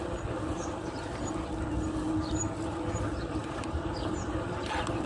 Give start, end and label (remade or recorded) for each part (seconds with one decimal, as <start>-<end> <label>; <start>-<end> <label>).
0.0-3.4 recorded; 3.4-3.9 remade; 3.9-5.1 recorded